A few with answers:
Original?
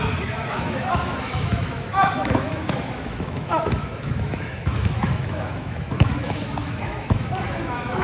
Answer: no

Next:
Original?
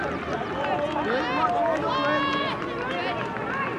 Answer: yes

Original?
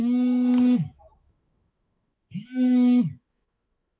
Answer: no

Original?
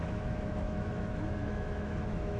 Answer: no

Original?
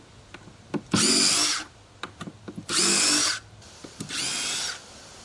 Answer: yes